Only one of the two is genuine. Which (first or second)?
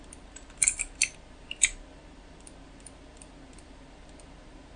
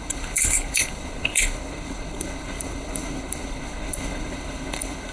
first